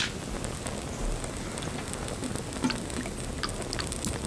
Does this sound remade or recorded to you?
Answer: recorded